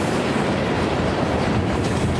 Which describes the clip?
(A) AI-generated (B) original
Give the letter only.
A